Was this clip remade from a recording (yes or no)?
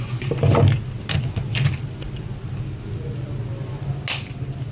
no